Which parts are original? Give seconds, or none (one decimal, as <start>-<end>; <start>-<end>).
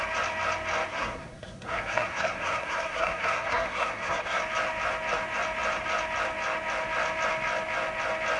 0.0-0.9; 4.4-8.4